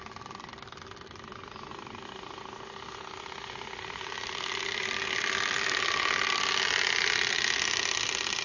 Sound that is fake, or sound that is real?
real